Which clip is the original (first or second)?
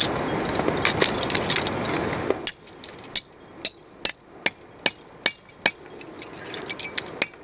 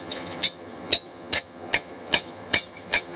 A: first